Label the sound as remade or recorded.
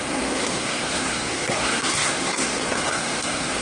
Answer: remade